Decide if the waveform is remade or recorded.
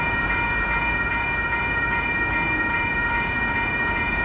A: remade